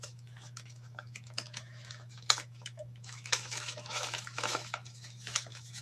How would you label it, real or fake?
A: fake